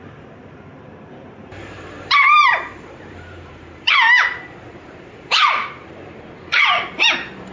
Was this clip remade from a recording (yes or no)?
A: yes